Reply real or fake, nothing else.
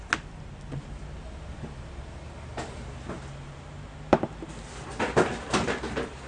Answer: real